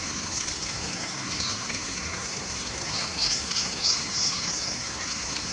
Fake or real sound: fake